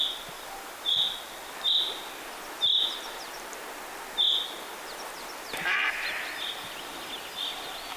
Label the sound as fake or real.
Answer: real